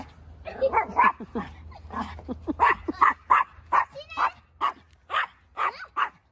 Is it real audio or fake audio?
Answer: real